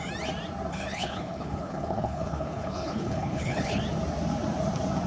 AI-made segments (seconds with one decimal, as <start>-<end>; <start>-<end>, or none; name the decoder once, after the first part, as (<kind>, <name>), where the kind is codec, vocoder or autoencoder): 0.7-3.8 (codec, HILCodec)